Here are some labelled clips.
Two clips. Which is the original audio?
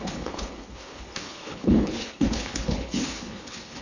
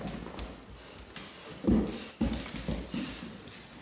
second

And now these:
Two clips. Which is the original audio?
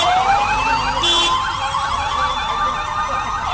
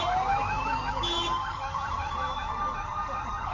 first